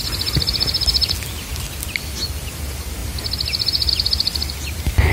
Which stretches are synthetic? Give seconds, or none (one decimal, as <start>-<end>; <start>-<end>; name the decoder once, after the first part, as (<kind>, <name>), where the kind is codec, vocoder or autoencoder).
3.0-3.9 (vocoder, BigVGAN v2)

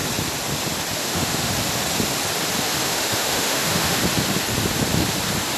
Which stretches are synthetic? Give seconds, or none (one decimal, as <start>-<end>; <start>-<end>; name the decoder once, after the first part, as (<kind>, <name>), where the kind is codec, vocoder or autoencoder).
1.0-1.5 (autoencoder, DAC-VAE); 2.8-4.0

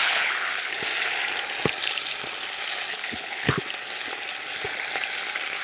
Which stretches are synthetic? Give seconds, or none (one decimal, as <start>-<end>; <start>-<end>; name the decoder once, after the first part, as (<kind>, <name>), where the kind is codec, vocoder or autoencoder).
0.0-0.7 (codec, HILCodec); 2.9-3.6

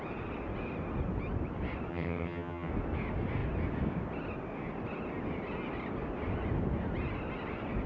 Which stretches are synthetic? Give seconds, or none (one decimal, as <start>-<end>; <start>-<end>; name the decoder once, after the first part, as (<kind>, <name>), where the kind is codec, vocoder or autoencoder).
1.9-2.7 (vocoder, HiFi-GAN)

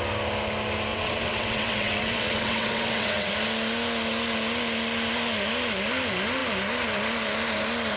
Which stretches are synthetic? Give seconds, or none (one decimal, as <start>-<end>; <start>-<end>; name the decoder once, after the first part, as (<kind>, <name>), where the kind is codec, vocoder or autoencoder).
0.9-3.3 (vocoder, WaveNeXt)

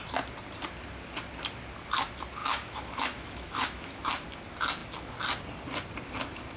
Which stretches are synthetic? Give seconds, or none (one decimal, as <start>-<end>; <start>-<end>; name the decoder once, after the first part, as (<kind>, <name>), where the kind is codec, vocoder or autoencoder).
2.4-4.0 (autoencoder, DAC-VAE)

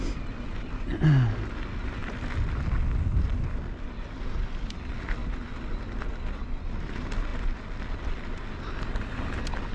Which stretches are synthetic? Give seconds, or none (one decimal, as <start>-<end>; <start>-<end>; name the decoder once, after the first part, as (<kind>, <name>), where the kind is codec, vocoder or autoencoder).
none

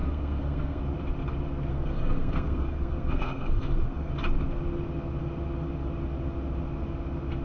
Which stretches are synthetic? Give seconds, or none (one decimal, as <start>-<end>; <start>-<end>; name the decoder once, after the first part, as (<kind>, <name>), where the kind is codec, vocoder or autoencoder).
0.0-0.8 (codec, SNAC); 1.7-4.1